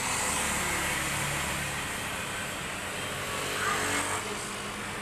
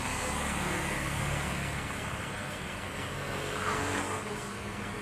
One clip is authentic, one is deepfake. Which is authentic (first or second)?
first